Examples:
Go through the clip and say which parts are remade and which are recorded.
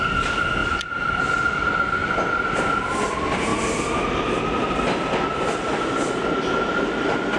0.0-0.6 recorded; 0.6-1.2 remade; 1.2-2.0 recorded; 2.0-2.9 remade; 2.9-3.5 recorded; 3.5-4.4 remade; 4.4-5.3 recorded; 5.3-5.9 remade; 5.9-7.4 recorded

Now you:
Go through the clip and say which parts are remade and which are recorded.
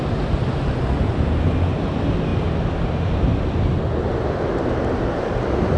0.0-5.8 recorded